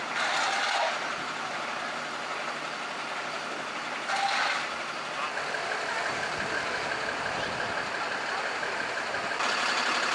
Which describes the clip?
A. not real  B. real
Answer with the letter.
B